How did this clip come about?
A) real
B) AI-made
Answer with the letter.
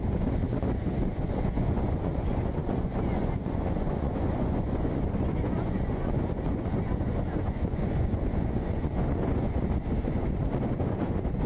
B